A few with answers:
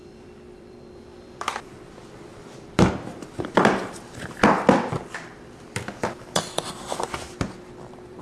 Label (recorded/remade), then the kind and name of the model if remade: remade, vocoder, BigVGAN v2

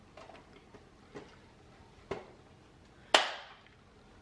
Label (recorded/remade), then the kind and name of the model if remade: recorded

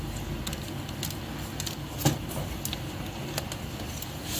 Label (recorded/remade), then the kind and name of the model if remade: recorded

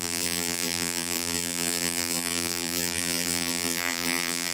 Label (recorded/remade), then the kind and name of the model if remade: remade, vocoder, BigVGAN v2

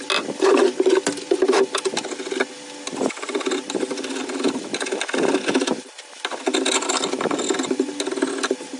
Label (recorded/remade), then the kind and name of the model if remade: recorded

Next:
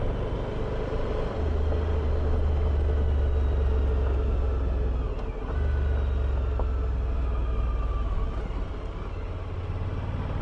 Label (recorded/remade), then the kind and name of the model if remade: recorded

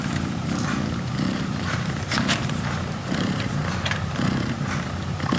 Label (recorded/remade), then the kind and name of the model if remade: remade, vocoder, BigVGAN v2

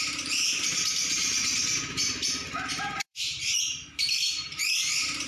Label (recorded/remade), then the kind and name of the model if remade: remade, vocoder, BigVGAN v2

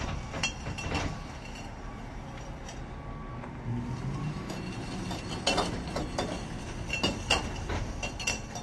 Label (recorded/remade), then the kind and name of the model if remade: recorded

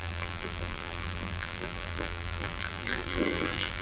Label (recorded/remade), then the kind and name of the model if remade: remade, vocoder, BigVGAN v2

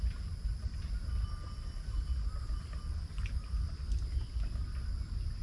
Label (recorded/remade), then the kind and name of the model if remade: recorded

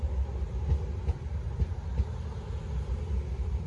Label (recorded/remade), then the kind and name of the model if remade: recorded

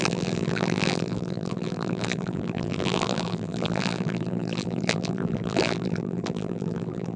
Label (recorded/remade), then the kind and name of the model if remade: remade, vocoder, BigVGAN v2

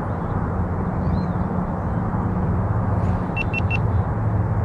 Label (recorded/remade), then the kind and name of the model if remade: recorded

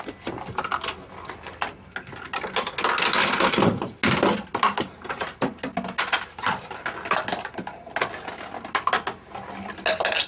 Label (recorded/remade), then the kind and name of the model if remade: recorded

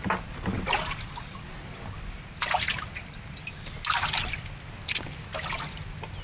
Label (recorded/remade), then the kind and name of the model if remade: recorded